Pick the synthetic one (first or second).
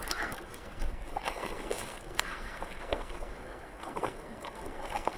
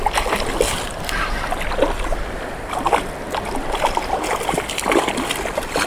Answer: first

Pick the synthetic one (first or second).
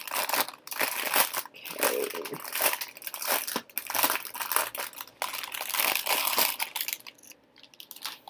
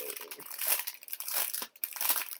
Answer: second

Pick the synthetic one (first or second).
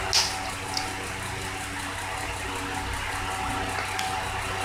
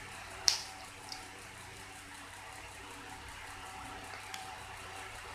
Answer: second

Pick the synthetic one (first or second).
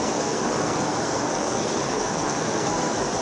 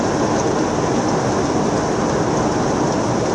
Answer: first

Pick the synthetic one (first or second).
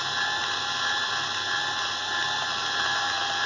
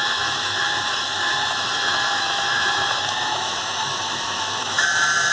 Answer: second